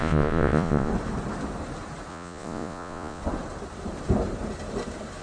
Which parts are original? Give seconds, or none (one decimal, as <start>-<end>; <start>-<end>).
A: 0.9-2.1; 3.2-5.2